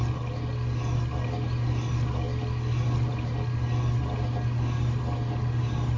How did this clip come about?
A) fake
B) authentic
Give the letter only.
B